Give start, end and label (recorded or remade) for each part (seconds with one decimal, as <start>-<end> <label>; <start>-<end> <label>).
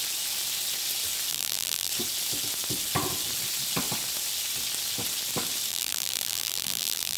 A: 0.0-1.3 recorded; 1.3-1.9 remade; 1.9-5.7 recorded; 5.7-7.2 remade